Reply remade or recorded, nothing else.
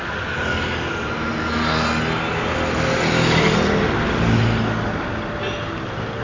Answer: recorded